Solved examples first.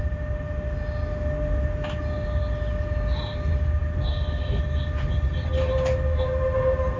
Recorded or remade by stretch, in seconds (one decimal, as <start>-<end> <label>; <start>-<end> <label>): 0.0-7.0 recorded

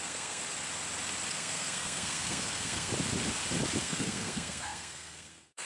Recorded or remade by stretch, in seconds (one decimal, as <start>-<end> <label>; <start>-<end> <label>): 0.0-0.4 remade; 0.4-1.3 recorded; 1.3-2.9 remade; 2.9-3.8 recorded; 3.8-5.7 remade

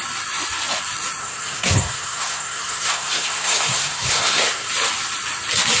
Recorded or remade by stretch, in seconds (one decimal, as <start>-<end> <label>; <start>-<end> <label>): 0.0-1.2 recorded; 1.2-4.7 remade; 4.7-5.8 recorded

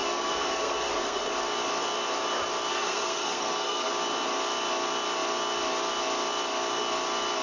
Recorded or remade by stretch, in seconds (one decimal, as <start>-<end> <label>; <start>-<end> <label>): 0.0-1.3 remade; 1.3-2.7 recorded; 2.7-3.9 remade; 3.9-7.4 recorded

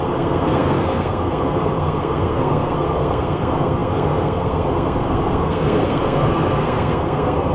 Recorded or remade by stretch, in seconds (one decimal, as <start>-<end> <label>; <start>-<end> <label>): 0.0-7.5 remade

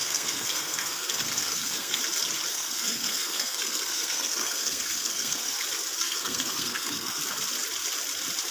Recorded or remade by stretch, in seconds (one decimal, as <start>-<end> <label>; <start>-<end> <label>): 0.0-2.0 remade; 2.0-2.5 recorded; 2.5-5.5 remade; 5.5-6.0 recorded; 6.0-7.2 remade; 7.2-8.5 recorded